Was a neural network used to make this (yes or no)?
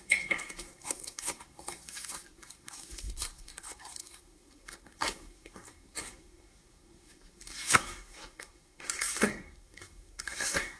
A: yes